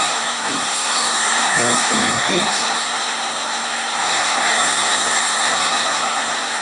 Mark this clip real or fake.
fake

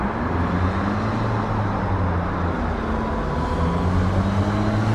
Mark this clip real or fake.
real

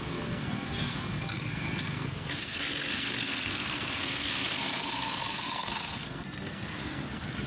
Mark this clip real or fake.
fake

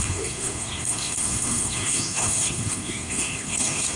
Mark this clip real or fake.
fake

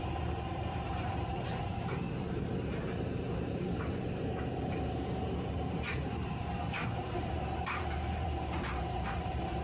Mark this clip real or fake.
fake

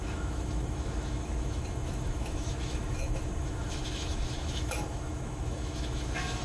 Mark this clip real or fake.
fake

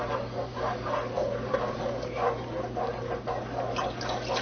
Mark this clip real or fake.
real